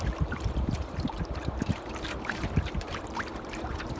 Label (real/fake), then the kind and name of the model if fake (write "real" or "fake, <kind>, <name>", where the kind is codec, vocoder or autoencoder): fake, vocoder, BigVGAN v2